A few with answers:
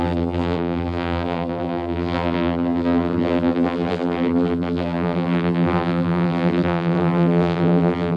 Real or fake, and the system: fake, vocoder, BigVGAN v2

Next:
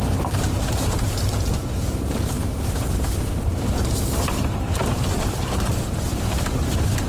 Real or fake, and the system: fake, vocoder, BigVGAN v2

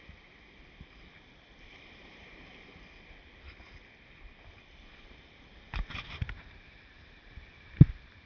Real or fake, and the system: fake, vocoder, BigVGAN v2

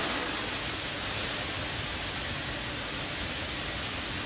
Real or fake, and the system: real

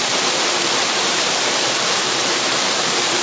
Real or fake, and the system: fake, vocoder, BigVGAN v2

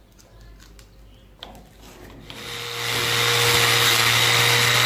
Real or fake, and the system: fake, vocoder, BigVGAN v2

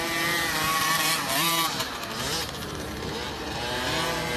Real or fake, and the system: fake, vocoder, BigVGAN v2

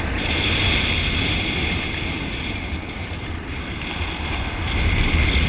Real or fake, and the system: real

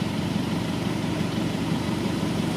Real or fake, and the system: fake, vocoder, BigVGAN v2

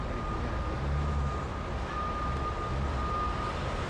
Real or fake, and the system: real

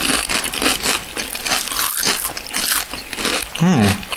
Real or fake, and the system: real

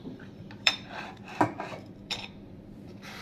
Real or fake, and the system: fake, vocoder, BigVGAN v2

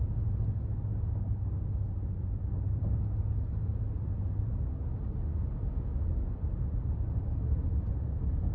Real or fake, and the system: real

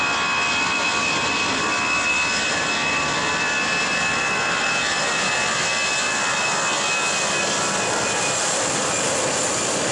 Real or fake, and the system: fake, vocoder, BigVGAN v2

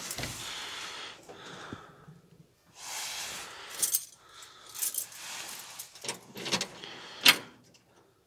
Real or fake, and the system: real